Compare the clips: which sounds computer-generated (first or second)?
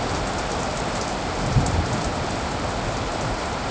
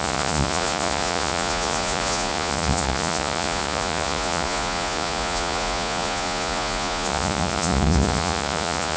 second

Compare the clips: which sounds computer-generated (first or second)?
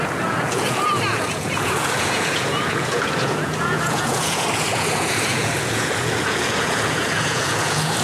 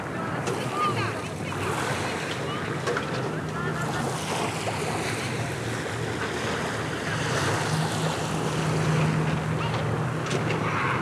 first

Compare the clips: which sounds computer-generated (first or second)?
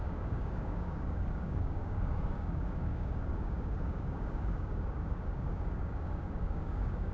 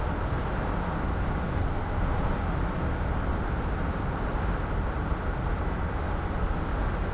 first